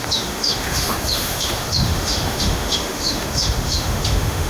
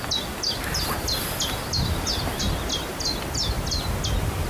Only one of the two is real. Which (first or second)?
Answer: second